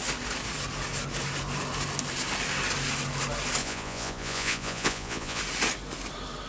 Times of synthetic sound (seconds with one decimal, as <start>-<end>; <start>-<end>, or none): 3.6-5.4